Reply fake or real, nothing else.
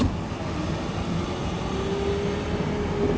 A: real